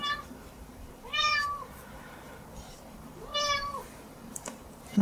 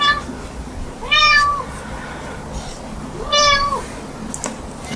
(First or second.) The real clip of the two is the second